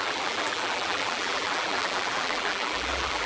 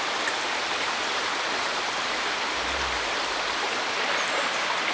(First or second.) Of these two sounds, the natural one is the second